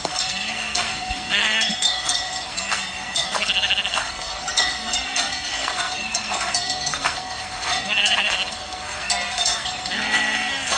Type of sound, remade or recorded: remade